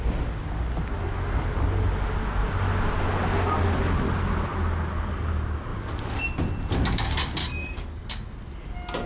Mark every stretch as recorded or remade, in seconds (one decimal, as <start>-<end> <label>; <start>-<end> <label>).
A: 0.0-5.7 recorded; 5.7-6.2 remade; 6.2-7.4 recorded; 7.4-8.1 remade; 8.1-9.1 recorded